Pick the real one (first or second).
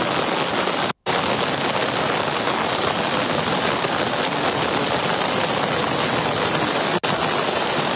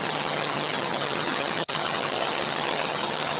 first